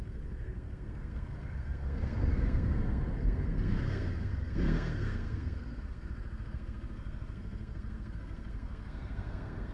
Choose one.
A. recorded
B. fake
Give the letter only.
B